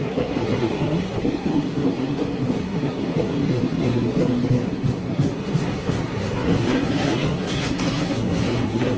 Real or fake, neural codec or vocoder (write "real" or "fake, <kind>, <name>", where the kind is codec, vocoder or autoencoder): fake, codec, SNAC